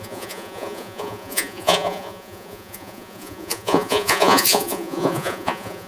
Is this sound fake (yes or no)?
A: yes